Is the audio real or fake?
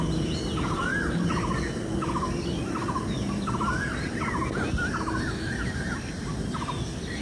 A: real